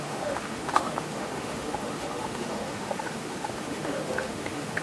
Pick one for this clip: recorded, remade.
remade